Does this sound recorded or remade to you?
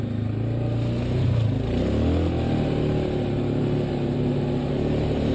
recorded